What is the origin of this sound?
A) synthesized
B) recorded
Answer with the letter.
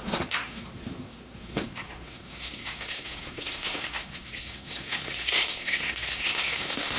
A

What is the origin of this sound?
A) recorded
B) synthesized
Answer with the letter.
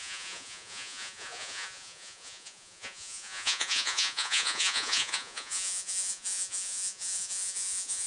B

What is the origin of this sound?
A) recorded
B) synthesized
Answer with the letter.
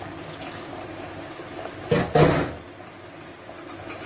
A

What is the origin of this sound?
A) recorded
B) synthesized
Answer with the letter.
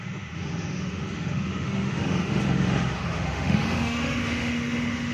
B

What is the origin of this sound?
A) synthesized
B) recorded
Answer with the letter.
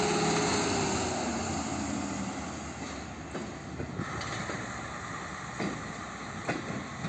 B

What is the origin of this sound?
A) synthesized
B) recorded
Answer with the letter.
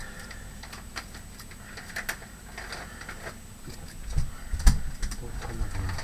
B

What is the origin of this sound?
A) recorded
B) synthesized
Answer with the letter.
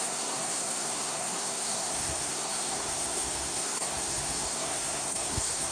B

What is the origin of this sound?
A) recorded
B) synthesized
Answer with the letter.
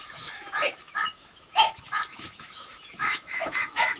B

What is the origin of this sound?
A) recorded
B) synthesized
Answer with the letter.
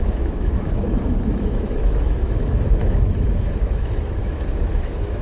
B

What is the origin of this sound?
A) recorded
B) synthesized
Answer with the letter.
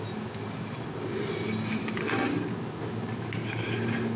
A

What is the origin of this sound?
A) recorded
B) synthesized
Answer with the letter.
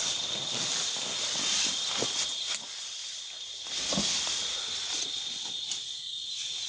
A